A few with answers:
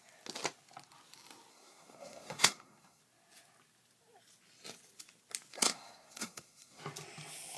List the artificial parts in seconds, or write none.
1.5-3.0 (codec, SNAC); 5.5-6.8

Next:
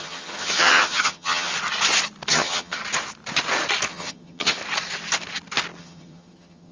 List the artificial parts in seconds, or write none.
0.0-1.5 (vocoder, HiFi-GAN); 2.3-2.8; 3.9-4.6; 5.8-6.7

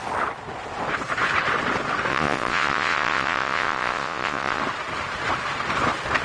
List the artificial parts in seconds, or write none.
2.1-4.6 (vocoder, Vocos)

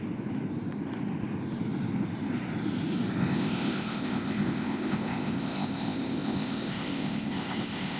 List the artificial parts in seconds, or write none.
3.2-8.0 (codec, ZipCodec)

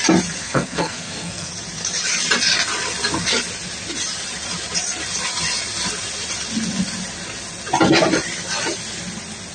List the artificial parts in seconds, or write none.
0.4-1.5 (codec, SNAC)